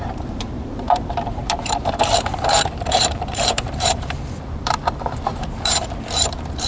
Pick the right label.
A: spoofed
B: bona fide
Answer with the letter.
A